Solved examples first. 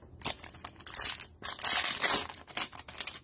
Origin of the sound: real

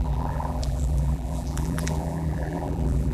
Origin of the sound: fake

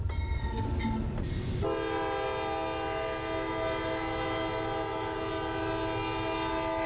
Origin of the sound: real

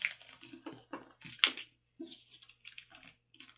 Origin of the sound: real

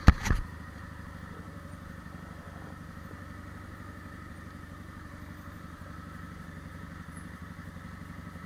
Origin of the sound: fake